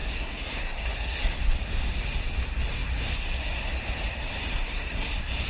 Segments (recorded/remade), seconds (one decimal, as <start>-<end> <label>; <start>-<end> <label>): 0.0-1.4 remade; 1.4-4.4 recorded; 4.4-5.1 remade; 5.1-5.5 recorded